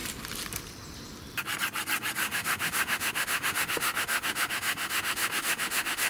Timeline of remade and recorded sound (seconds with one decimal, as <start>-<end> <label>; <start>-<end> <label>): 0.0-2.2 recorded; 2.2-6.1 remade